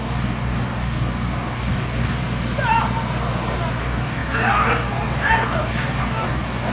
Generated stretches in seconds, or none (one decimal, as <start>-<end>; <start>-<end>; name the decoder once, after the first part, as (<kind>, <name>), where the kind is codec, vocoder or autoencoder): 0.0-2.2 (codec, DAC); 3.8-6.7